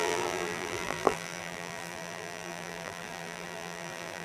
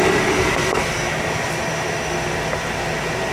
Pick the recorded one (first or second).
second